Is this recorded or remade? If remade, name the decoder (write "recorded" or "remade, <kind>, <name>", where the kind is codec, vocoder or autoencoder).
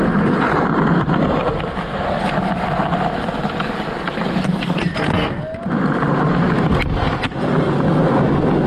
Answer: recorded